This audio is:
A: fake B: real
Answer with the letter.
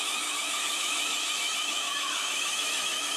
A